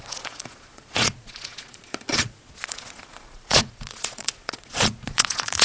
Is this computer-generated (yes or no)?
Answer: yes